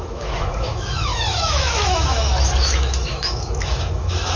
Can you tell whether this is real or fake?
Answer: fake